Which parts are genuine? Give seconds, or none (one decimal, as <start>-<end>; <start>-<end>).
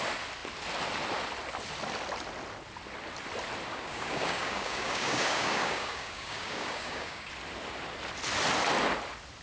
0.0-3.7; 7.3-9.4